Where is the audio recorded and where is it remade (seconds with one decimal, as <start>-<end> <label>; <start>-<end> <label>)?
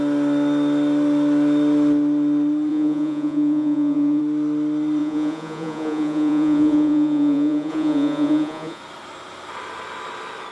0.0-2.7 recorded; 2.7-4.2 remade; 4.2-5.0 recorded; 5.0-8.8 remade; 8.8-10.5 recorded